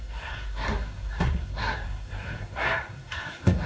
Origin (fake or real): fake